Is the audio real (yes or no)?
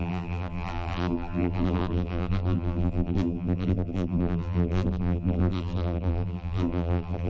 no